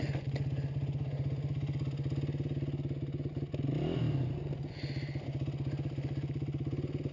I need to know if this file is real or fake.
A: real